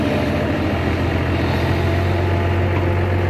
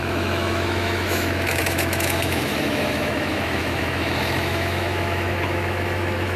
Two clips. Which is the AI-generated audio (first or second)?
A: second